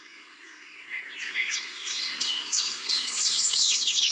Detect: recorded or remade remade